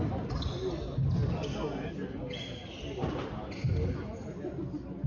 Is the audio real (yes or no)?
yes